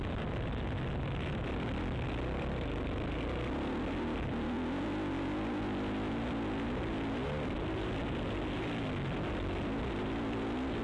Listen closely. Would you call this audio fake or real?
real